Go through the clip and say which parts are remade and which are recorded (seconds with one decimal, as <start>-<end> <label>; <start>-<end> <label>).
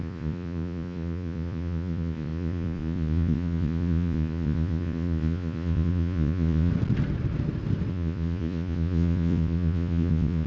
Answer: 0.0-6.7 remade; 6.7-7.9 recorded; 7.9-10.5 remade